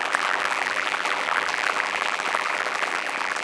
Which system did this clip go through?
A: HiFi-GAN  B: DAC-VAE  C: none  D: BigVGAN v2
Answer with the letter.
D